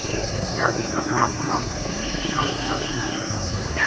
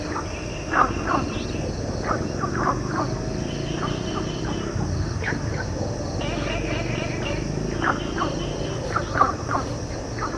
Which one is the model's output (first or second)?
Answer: first